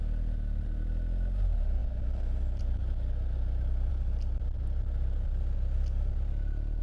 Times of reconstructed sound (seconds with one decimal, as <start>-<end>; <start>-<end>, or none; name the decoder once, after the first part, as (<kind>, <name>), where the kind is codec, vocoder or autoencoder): none